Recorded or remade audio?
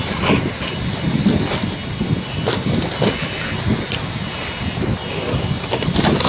recorded